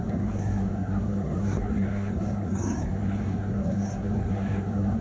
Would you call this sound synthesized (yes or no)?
yes